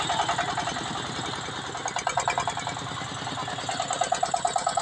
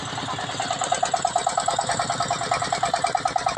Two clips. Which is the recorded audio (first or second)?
first